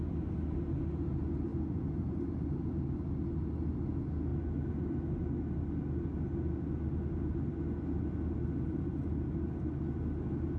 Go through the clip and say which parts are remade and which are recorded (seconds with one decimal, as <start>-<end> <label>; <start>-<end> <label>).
0.0-1.5 recorded; 1.5-2.8 remade; 2.8-10.6 recorded